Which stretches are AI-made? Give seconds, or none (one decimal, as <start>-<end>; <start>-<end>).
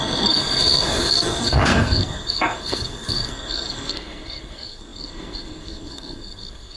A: 0.0-6.8